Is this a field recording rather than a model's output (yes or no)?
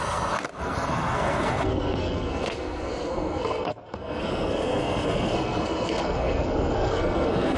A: no